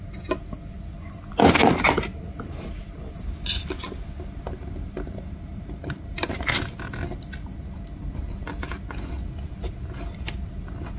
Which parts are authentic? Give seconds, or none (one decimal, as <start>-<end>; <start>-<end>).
0.0-1.6; 2.7-5.5; 6.9-11.0